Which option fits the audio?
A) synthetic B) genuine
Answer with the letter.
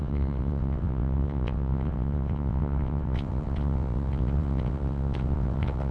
A